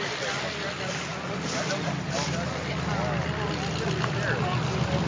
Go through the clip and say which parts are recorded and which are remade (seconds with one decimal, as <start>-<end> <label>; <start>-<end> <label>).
0.0-5.1 recorded